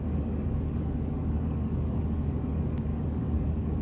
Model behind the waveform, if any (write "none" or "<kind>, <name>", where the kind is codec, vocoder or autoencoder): codec, DAC